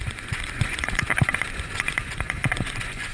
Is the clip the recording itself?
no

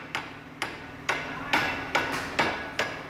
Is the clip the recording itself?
yes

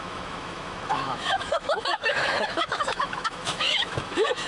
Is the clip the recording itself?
no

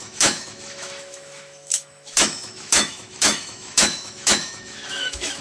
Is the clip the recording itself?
no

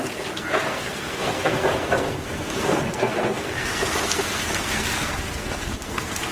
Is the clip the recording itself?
no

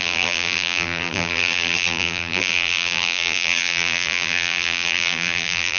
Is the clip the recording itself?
no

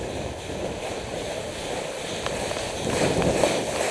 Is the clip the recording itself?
yes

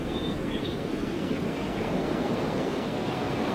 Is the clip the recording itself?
no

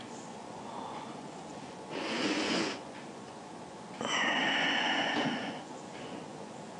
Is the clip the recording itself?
no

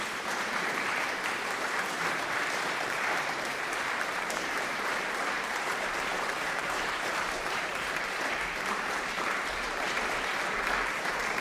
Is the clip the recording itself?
no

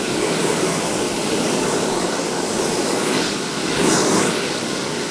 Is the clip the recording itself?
no